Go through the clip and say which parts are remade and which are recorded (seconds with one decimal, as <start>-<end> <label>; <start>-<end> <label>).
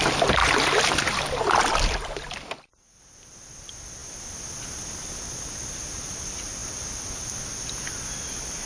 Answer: 0.0-8.7 recorded